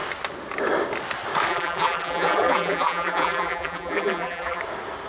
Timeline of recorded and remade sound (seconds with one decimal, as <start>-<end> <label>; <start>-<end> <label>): 0.0-1.5 recorded; 1.5-4.6 remade; 4.6-5.1 recorded